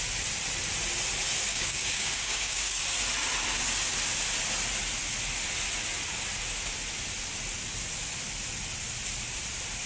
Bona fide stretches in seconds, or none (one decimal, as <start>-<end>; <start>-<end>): 0.0-1.5; 2.8-9.9